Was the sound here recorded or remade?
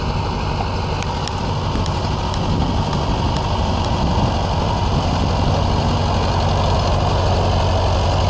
recorded